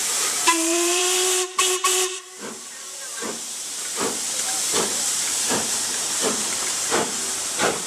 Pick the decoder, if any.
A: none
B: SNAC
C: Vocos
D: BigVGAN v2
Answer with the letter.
D